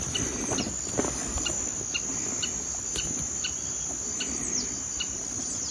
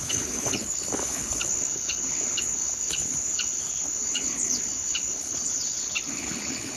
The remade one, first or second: second